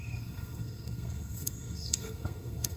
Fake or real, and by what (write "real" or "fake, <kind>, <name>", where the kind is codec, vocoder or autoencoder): fake, codec, SNAC